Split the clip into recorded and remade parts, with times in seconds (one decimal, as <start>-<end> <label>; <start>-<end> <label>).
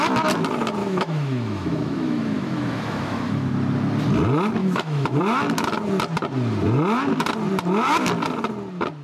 0.0-0.8 recorded; 0.8-3.5 remade; 3.5-4.6 recorded; 4.6-5.2 remade; 5.2-9.0 recorded